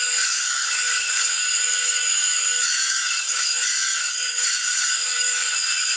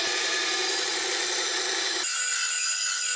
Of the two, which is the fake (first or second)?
first